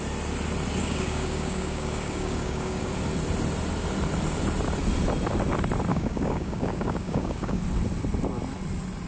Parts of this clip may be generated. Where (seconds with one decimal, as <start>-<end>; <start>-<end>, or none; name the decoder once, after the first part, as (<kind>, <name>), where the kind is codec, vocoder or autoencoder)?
0.8-2.9 (codec, DAC); 5.9-7.6